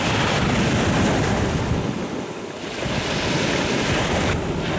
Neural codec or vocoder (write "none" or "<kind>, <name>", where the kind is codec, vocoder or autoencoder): none